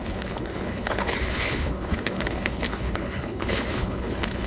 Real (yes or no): no